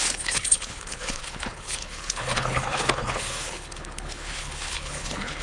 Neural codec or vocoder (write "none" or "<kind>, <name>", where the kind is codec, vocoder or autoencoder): codec, HILCodec